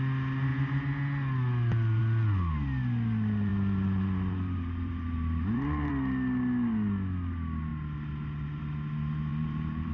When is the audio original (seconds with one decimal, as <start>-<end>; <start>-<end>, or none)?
0.0-3.5; 5.9-9.3